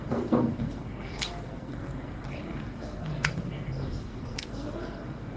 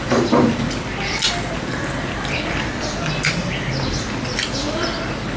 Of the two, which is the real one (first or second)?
second